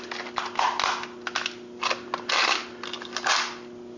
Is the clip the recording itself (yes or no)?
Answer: yes